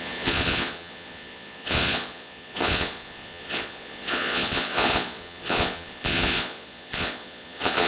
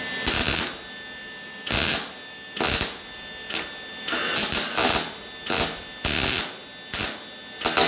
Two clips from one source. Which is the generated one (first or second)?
first